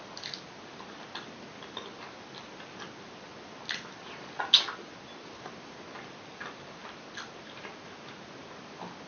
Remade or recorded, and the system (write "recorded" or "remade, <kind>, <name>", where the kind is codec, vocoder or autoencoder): recorded